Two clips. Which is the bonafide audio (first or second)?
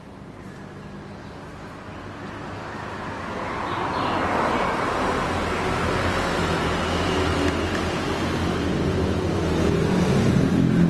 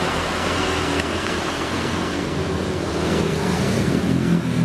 first